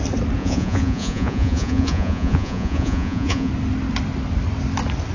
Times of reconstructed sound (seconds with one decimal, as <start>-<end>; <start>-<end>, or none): 0.4-3.5